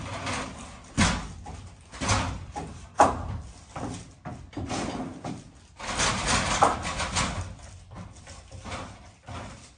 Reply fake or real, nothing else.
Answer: real